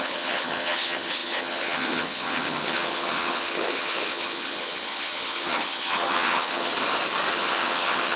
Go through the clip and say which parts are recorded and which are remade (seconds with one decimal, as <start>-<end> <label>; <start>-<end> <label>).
0.0-6.7 remade; 6.7-7.3 recorded; 7.3-8.2 remade

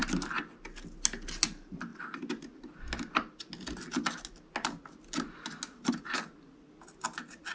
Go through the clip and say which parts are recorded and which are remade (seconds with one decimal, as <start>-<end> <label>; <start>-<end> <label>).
0.0-7.5 recorded

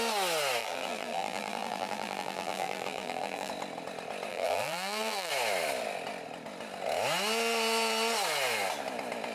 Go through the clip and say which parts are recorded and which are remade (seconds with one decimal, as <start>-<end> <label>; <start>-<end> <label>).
0.0-0.6 recorded; 0.6-3.5 remade; 3.5-4.3 recorded; 4.3-5.3 remade; 5.3-9.3 recorded

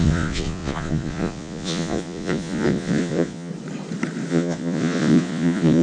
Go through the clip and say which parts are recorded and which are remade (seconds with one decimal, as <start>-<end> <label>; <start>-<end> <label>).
0.0-3.5 remade; 3.5-4.3 recorded; 4.3-5.8 remade

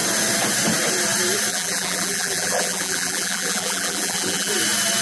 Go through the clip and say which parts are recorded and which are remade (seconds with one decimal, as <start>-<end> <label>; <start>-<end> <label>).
0.0-1.5 recorded; 1.5-4.5 remade; 4.5-5.0 recorded